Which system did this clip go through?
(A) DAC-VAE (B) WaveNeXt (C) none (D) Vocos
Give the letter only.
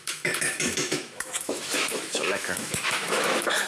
A